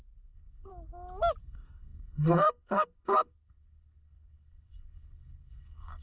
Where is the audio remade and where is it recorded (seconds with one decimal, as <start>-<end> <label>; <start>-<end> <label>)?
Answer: 0.0-0.7 remade; 0.7-1.4 recorded; 1.4-6.0 remade